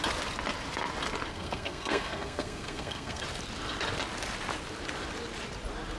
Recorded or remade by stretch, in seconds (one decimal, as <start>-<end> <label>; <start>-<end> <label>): 0.0-1.3 recorded; 1.3-3.2 remade; 3.2-6.0 recorded